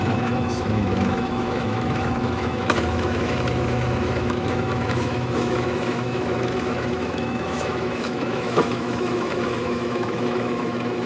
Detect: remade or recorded remade